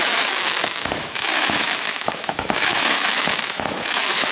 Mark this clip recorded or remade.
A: remade